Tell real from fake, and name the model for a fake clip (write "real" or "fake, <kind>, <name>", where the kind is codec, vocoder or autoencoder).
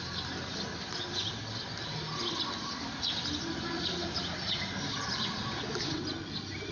real